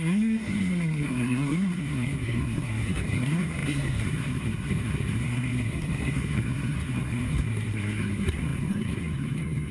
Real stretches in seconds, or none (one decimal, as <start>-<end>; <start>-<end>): none